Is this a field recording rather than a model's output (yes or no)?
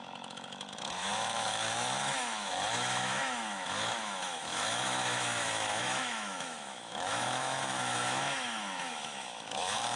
no